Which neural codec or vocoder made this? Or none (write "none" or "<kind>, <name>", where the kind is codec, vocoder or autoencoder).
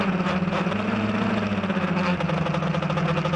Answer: none